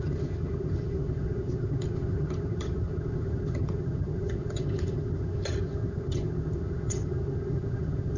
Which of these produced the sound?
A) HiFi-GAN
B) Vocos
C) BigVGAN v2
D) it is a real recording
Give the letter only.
A